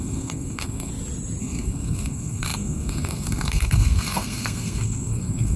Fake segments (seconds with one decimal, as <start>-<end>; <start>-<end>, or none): 0.0-0.9; 1.4-5.6